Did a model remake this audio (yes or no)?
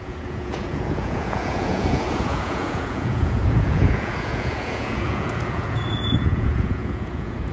yes